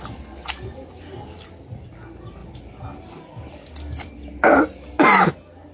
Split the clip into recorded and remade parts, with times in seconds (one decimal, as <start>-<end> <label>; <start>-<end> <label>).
0.0-5.7 recorded